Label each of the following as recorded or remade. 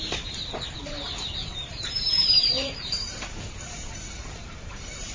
remade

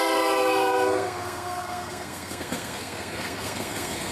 remade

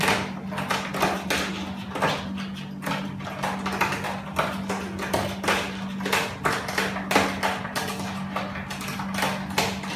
recorded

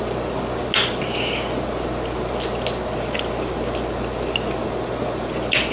recorded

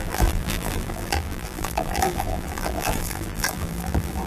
remade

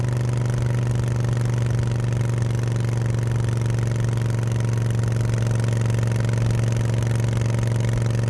recorded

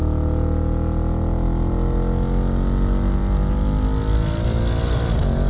recorded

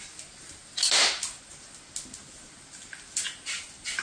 recorded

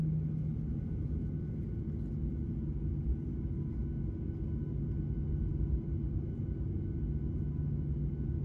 recorded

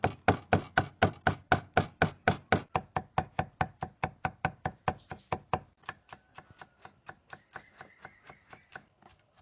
recorded